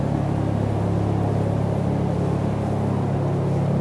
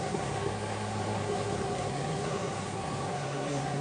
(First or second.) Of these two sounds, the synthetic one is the second